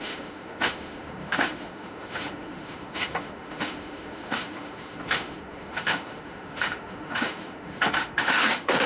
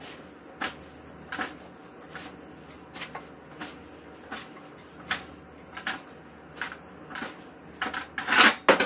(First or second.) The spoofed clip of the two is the first